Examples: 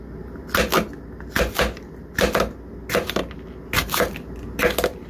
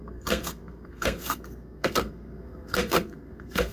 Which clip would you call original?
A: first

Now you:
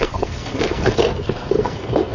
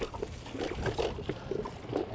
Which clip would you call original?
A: second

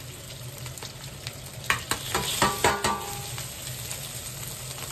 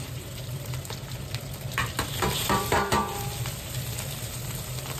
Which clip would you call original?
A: first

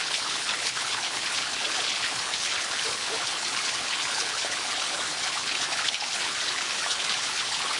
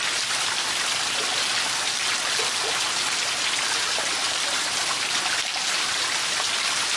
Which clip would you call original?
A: second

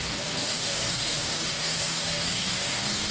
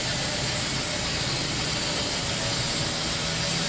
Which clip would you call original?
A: second